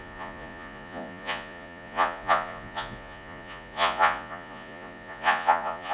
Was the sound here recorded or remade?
remade